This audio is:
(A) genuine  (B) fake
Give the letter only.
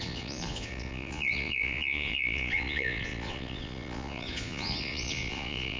B